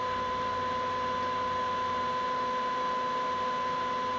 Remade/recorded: recorded